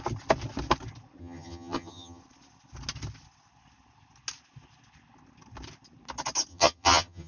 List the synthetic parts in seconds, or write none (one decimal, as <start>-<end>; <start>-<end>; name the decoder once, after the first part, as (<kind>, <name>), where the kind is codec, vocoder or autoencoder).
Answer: 1.2-2.2 (vocoder, HiFi-GAN); 6.5-7.3

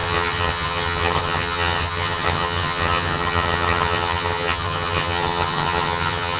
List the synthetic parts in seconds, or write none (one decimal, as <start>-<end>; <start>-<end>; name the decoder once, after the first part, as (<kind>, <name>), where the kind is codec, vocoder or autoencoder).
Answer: 0.0-6.4 (vocoder, HiFi-GAN)

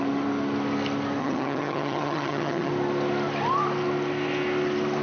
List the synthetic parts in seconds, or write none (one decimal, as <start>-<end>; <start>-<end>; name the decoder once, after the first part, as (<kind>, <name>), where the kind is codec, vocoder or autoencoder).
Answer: 1.2-2.7 (vocoder, HiFi-GAN)